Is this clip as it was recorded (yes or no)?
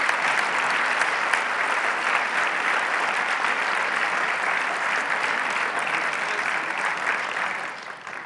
yes